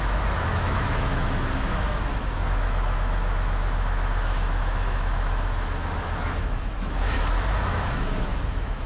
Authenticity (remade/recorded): remade